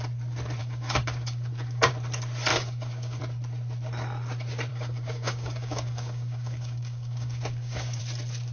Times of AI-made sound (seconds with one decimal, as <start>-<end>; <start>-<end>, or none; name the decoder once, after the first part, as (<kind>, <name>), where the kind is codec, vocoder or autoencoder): 0.6-1.9 (codec, DAC); 2.5-3.2; 4.7-8.0